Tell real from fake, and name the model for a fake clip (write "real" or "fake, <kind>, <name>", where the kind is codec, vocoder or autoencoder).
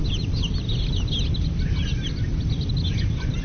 real